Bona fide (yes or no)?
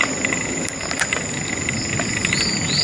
yes